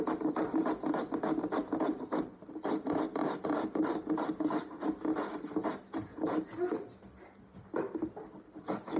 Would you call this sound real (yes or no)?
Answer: yes